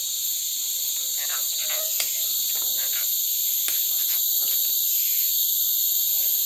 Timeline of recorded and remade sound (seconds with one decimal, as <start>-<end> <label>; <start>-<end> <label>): 0.0-6.5 recorded